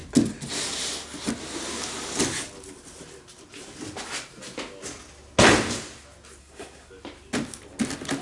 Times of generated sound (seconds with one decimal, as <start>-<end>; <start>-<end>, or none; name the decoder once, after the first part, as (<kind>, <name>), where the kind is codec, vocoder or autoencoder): 6.4-6.9 (codec, SNAC)